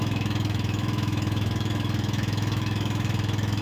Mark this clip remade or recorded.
remade